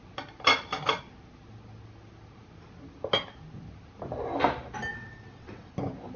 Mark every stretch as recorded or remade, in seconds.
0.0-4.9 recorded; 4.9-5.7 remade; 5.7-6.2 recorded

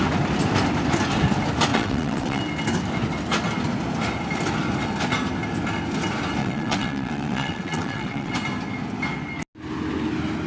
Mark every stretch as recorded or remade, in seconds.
0.0-1.7 recorded; 1.7-2.4 remade; 2.4-6.4 recorded; 6.4-8.3 remade; 8.3-10.5 recorded

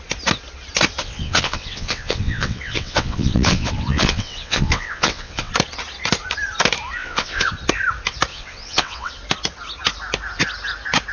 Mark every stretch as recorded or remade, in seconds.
0.0-1.0 recorded; 1.0-5.5 remade; 5.5-7.0 recorded; 7.0-7.5 remade; 7.5-8.3 recorded; 8.3-9.1 remade; 9.1-11.1 recorded

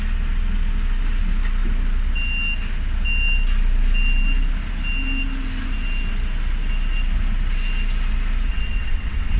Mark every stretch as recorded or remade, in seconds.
0.0-8.5 recorded; 8.5-9.4 remade

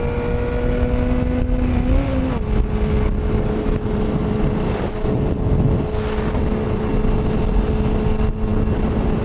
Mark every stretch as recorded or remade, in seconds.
0.0-9.2 recorded

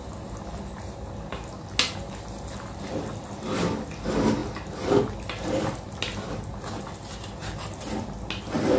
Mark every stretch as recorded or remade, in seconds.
0.0-8.8 recorded